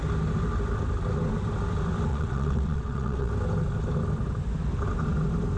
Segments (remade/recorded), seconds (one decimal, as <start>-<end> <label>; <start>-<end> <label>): 0.0-2.1 recorded; 2.1-3.3 remade; 3.3-5.6 recorded